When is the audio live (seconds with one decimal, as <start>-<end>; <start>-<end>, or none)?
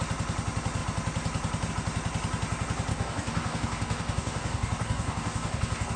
0.0-2.9